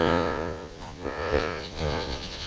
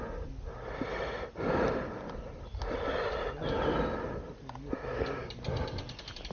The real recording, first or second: second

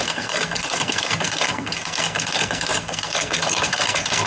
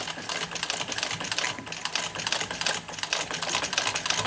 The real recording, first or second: second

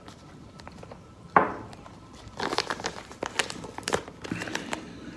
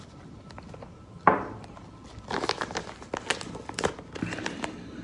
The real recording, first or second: second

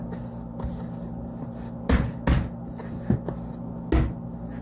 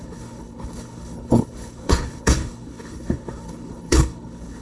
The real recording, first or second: first